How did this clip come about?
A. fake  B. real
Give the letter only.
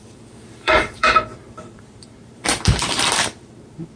A